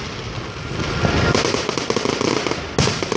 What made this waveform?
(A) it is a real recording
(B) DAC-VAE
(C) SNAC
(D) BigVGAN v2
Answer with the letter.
A